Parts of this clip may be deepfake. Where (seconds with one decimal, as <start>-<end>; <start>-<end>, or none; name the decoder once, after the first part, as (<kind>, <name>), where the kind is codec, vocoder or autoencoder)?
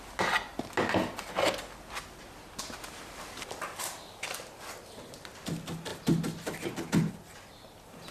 none